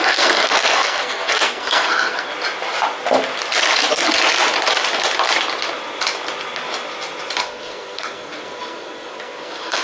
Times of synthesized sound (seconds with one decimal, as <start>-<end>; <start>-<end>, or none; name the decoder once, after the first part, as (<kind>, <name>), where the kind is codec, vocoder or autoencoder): 0.0-2.3 (codec, SNAC); 7.4-9.8